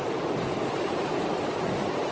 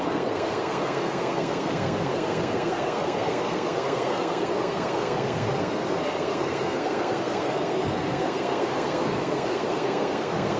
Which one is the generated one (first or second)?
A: second